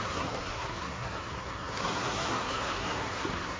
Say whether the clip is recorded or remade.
remade